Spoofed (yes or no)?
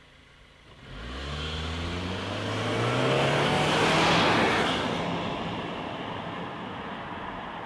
no